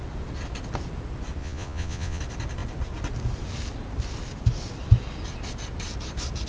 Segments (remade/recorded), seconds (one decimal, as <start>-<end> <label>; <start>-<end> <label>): 0.0-1.4 recorded; 1.4-2.2 remade; 2.2-6.5 recorded